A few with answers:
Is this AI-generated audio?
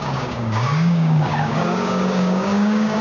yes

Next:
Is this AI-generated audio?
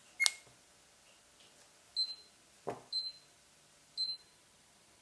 no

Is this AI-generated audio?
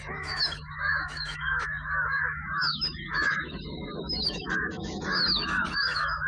yes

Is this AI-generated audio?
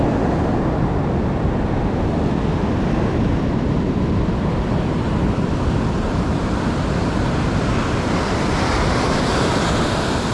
no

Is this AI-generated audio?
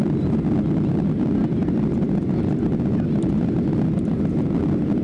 no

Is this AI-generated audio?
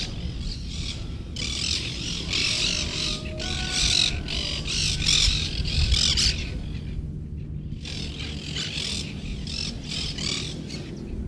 no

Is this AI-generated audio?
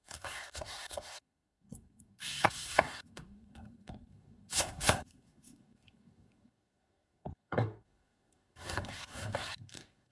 yes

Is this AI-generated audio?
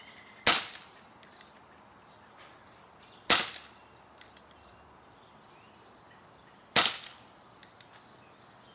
no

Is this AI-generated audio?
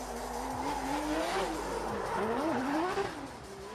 no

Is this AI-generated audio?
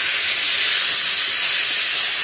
no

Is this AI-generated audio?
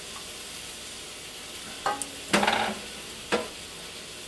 no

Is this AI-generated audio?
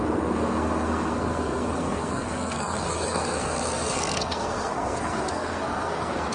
yes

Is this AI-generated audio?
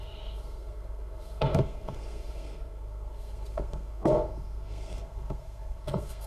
yes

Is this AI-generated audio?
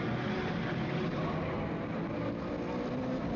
no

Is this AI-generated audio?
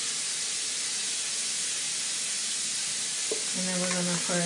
no